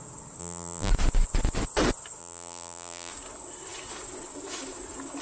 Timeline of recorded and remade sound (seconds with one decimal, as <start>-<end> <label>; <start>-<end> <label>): 0.0-0.4 recorded; 0.4-0.9 remade; 0.9-2.2 recorded; 2.2-3.1 remade; 3.1-5.2 recorded